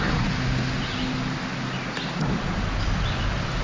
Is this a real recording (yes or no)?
yes